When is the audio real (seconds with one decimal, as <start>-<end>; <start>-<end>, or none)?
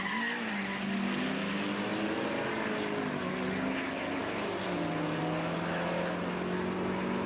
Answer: 0.0-7.3